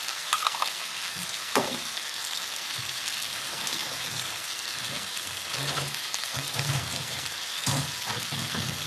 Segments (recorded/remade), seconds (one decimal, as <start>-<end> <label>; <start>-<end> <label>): 0.0-8.9 remade